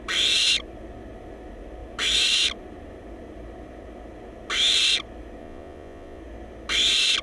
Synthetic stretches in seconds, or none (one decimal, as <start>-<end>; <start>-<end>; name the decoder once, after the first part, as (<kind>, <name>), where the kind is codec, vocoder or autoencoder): 5.4-6.2 (vocoder, Vocos)

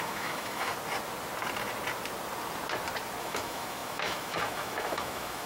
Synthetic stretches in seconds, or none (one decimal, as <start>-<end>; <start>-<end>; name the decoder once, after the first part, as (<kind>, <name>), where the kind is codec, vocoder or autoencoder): 0.0-0.7 (autoencoder, DAC-VAE); 3.2-5.5

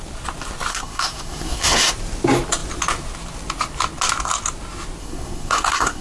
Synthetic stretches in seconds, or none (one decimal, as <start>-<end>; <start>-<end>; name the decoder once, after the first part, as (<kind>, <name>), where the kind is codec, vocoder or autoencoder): 0.7-1.9 (codec, SNAC); 5.0-6.0

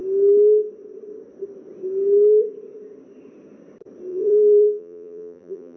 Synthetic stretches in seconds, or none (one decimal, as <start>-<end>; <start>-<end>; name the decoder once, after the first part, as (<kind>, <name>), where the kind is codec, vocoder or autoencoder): 4.1-5.8 (vocoder, BigVGAN v2)